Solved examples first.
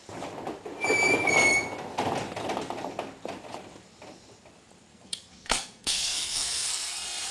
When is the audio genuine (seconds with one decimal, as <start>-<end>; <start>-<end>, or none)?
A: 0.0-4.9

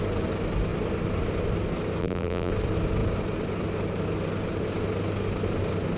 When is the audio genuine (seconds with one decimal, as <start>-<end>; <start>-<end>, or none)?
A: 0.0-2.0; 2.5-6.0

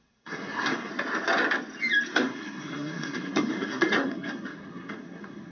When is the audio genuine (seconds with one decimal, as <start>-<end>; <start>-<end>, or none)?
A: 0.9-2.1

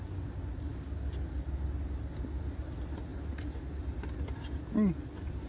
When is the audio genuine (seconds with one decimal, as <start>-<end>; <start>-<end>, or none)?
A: 0.0-5.5